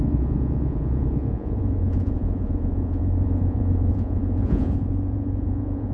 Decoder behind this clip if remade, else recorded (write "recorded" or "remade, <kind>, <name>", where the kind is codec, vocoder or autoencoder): remade, vocoder, Vocos